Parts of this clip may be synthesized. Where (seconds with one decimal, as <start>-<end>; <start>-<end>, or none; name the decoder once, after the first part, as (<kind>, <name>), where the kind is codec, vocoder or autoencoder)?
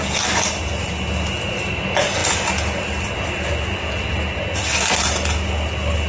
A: none